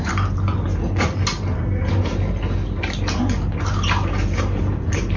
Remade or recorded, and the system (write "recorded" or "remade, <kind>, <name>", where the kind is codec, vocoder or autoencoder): recorded